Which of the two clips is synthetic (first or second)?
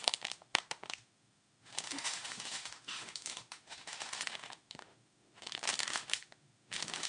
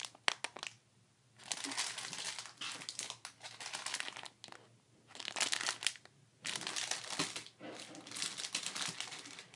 first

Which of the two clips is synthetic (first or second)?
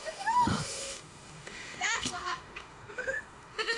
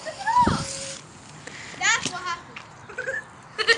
first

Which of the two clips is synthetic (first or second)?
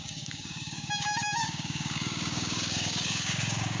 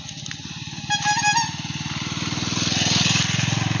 first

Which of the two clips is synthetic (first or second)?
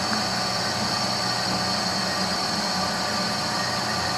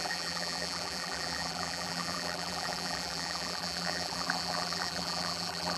second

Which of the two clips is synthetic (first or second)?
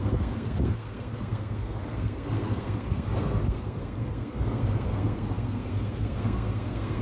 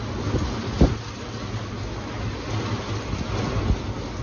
first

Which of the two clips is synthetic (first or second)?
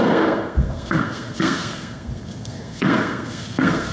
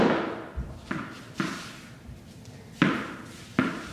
first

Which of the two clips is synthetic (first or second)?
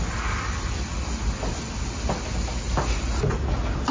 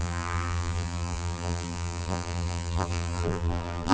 second